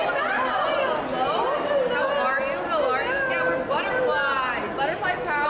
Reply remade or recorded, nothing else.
recorded